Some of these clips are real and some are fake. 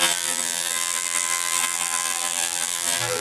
fake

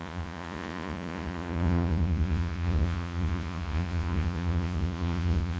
fake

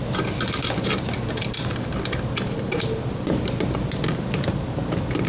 real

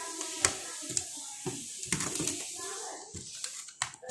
real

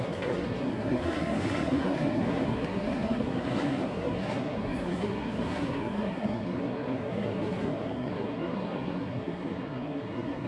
fake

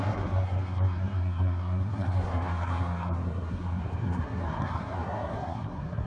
fake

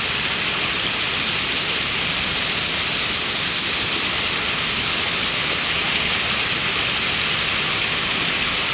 real